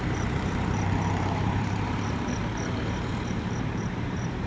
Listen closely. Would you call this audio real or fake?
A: fake